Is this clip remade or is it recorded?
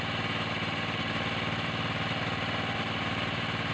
recorded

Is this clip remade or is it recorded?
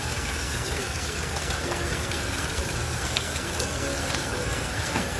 remade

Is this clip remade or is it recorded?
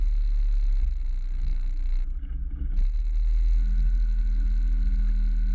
recorded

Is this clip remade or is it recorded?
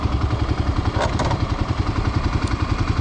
recorded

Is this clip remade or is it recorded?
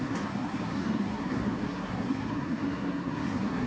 remade